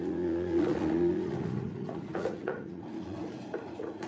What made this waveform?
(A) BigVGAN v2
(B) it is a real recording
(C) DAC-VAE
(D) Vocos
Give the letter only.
D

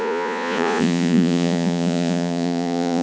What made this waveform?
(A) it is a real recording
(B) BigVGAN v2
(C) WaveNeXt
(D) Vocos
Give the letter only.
D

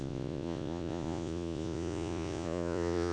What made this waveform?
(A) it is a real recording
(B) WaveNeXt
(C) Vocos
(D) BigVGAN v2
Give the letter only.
C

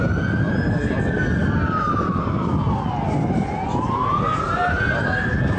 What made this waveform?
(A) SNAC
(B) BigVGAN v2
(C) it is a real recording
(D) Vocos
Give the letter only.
C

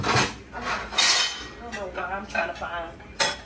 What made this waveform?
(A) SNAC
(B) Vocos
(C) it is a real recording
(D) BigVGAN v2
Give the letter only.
C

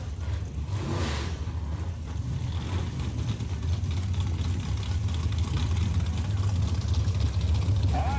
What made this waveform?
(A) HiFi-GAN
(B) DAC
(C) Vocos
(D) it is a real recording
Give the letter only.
D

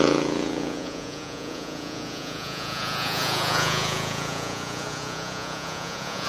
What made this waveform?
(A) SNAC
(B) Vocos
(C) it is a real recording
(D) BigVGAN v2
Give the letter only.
B